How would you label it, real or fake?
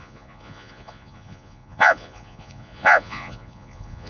fake